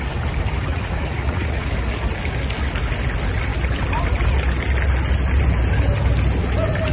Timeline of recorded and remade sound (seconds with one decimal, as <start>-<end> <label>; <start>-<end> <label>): 0.0-0.7 recorded; 0.7-1.7 remade; 1.7-6.9 recorded